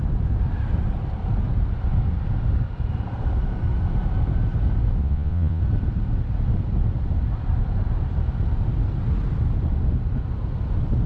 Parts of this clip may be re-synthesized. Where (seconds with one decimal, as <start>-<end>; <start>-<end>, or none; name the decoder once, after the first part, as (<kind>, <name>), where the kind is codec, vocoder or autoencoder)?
5.0-5.6 (vocoder, Vocos)